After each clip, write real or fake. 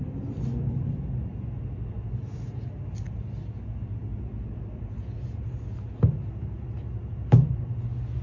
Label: real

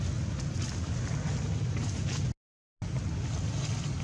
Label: real